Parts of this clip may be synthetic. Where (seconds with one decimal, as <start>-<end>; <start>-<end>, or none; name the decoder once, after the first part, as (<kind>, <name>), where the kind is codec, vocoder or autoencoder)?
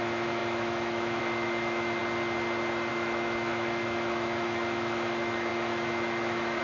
0.0-2.0 (autoencoder, DAC-VAE); 2.9-6.6